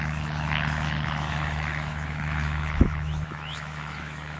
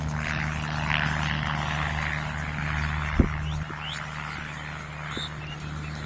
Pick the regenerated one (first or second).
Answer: first